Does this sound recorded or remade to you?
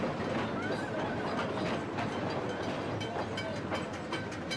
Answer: recorded